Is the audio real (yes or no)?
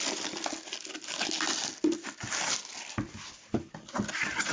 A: yes